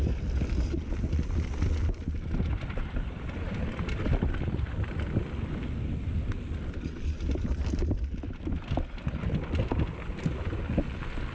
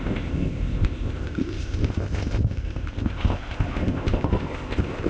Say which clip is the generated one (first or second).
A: second